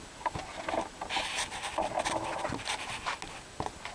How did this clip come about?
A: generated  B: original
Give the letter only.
B